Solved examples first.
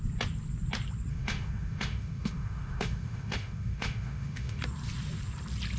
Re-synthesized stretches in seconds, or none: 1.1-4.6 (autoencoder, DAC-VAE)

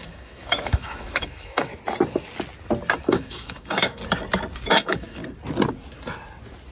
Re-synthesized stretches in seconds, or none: 0.0-1.7 (autoencoder, DAC-VAE); 3.0-4.0; 4.7-5.2

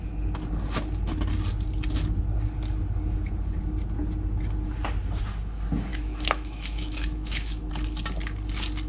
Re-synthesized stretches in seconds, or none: 5.9-7.7 (autoencoder, DAC-VAE)

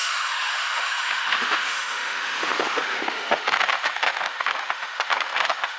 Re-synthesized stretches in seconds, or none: 0.0-5.8 (autoencoder, DAC-VAE)

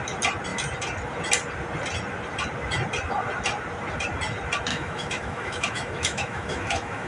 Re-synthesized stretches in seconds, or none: 4.7-7.1 (autoencoder, DAC-VAE)